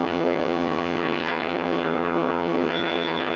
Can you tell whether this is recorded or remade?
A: remade